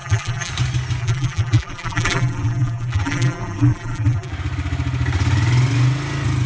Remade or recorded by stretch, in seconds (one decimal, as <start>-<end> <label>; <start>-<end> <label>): 0.0-0.5 remade; 0.5-1.0 recorded; 1.0-4.3 remade; 4.3-6.5 recorded